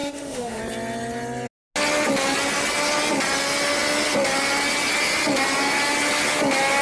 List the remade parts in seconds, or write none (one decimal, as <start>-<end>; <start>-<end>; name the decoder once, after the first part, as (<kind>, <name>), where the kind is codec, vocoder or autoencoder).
0.0-0.6 (autoencoder, DAC-VAE)